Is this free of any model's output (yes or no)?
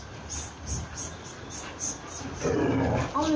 yes